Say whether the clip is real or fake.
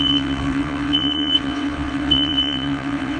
fake